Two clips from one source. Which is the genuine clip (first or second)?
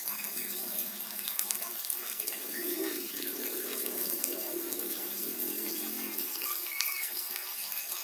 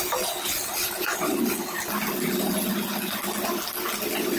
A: second